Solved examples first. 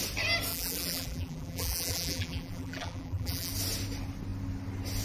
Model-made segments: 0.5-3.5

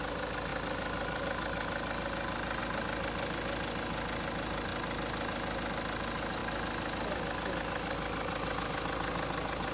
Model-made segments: none